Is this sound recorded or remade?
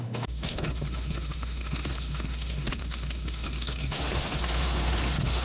remade